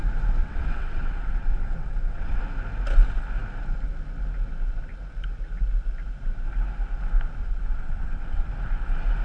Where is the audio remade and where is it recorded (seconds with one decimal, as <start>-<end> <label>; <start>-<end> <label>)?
0.0-0.4 recorded; 0.4-2.4 remade; 2.4-7.4 recorded; 7.4-8.5 remade; 8.5-9.2 recorded